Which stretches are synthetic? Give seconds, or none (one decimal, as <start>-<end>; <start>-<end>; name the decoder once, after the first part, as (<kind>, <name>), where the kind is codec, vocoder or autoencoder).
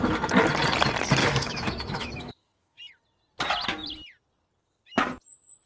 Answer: 1.2-2.8 (autoencoder, DAC-VAE)